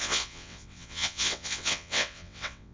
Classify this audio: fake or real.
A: fake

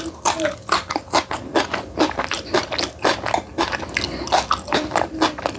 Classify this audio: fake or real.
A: real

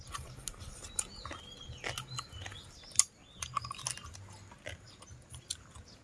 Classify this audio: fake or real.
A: real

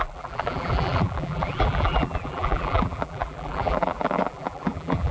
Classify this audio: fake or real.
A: fake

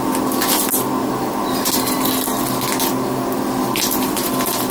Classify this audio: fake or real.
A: real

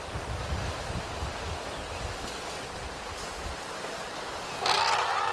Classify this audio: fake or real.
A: real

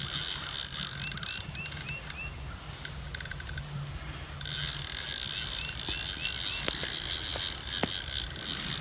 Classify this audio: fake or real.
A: real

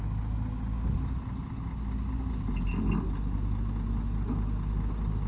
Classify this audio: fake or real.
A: real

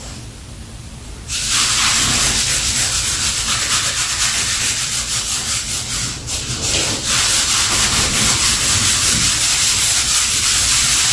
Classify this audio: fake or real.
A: fake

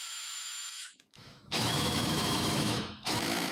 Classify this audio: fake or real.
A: fake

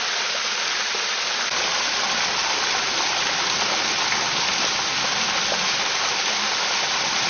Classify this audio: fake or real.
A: real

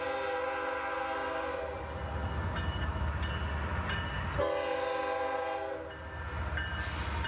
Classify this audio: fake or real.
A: real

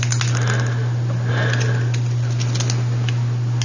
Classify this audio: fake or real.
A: real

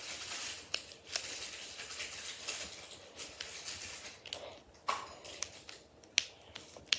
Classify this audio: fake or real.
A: real